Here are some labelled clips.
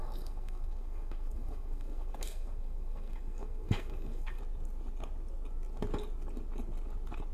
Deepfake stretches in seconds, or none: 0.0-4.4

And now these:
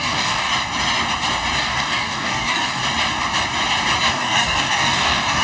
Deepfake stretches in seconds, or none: 0.0-0.5; 1.6-2.8; 4.1-5.4

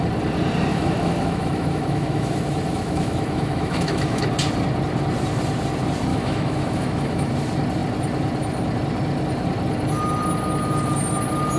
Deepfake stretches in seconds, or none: 0.7-4.2; 6.1-7.3

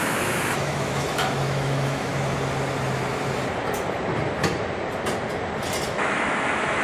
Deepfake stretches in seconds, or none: 0.0-2.1; 5.9-6.8

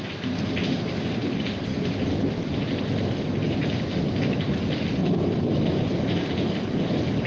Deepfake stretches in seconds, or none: 5.0-5.7

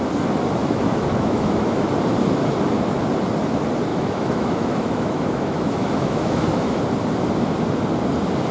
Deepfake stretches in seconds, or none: 0.6-1.9; 3.9-6.8